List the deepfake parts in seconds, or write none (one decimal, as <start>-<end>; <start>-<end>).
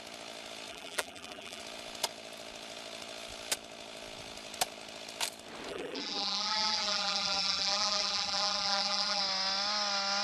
0.7-1.6; 5.7-9.2